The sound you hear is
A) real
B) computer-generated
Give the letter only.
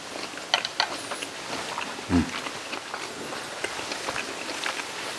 A